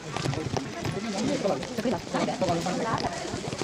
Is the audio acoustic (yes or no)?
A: yes